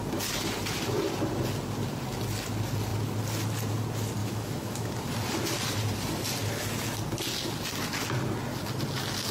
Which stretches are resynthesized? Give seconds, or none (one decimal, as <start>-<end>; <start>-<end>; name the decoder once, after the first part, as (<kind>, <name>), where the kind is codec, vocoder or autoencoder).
4.2-4.9 (autoencoder, DAC-VAE)